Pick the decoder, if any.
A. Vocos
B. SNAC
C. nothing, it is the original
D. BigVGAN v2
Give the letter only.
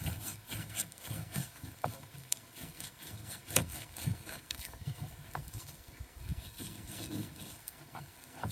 B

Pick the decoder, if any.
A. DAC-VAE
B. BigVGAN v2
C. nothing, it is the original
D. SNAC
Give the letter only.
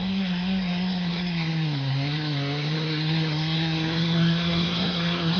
D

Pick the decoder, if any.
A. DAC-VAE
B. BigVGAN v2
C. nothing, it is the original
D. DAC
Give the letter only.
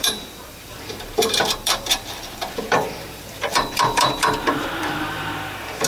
B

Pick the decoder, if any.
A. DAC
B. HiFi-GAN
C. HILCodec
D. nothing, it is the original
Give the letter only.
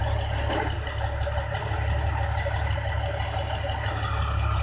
D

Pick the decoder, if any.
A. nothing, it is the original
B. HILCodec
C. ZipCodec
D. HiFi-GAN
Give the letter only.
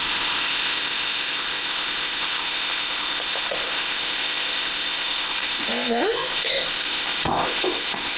C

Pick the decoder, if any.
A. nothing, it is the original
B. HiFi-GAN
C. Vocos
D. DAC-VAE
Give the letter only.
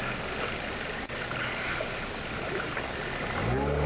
A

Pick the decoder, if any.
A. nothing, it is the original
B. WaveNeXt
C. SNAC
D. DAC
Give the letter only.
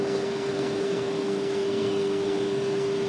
C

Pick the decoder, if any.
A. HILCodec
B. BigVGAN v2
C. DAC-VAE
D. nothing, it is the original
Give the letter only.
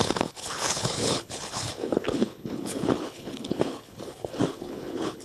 A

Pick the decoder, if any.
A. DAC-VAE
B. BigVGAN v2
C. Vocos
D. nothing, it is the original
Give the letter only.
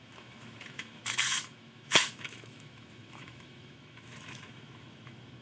A